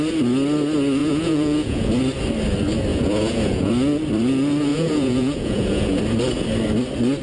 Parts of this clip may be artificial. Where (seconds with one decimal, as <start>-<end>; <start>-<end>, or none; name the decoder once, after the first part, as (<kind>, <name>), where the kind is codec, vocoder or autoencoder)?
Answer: 1.0-1.9 (vocoder, Vocos); 2.9-3.7; 4.7-6.0